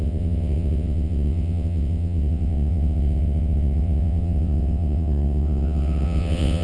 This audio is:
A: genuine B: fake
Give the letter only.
B